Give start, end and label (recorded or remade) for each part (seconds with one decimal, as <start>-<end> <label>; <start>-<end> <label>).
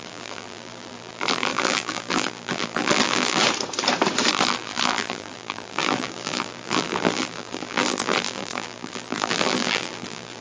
0.0-3.4 remade; 3.4-4.3 recorded; 4.3-10.4 remade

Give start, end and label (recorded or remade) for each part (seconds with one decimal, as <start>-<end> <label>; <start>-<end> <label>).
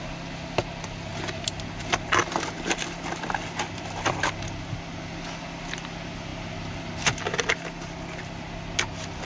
0.0-9.2 recorded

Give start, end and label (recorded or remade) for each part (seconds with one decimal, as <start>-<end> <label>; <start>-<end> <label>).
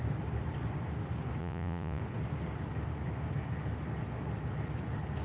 0.0-1.4 recorded; 1.4-2.0 remade; 2.0-5.2 recorded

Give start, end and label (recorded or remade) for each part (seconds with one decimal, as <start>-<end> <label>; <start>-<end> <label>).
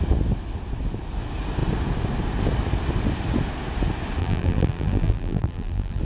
0.0-4.2 recorded; 4.2-6.0 remade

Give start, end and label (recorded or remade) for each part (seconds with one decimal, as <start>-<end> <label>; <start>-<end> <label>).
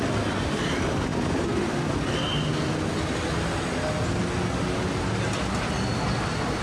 0.0-6.6 recorded